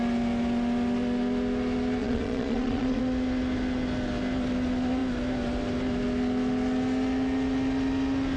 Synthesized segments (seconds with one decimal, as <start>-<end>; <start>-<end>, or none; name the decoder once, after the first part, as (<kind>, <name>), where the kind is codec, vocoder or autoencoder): 2.0-3.0 (vocoder, Vocos)